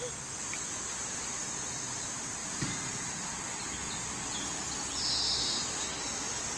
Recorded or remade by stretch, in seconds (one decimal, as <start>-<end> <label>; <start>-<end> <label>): 0.0-2.4 recorded; 2.4-3.3 remade; 3.3-6.6 recorded